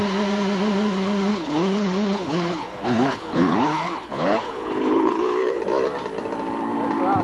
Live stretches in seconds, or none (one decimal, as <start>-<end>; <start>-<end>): 0.0-1.3; 5.6-7.2

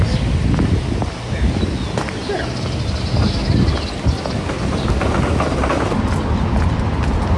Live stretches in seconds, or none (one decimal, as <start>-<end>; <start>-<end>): 0.0-7.4

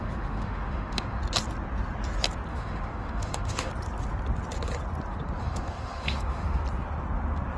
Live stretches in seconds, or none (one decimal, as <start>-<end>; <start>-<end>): 1.2-2.5; 3.7-5.4; 6.6-7.6

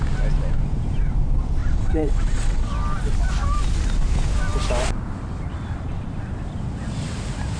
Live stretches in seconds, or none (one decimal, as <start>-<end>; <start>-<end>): 0.0-1.6; 2.7-7.6

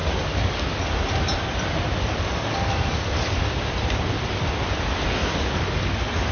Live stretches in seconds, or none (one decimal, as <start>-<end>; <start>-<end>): 0.8-2.0; 3.4-5.2

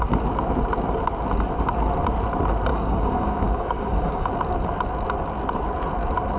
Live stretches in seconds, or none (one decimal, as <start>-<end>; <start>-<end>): 0.0-2.7; 4.3-6.4

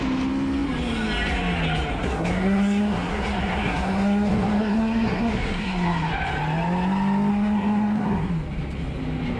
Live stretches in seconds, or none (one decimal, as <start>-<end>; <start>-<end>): 0.0-2.0; 6.1-7.3; 8.3-9.4